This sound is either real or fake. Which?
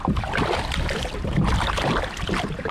real